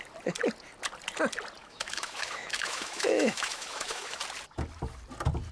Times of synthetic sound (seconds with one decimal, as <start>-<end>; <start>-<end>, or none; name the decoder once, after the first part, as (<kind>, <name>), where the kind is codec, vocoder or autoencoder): 1.6-4.2 (autoencoder, DAC-VAE)